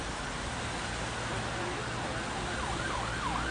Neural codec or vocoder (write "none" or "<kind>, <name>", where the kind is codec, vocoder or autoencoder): none